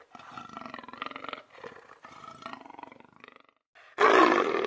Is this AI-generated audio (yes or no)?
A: no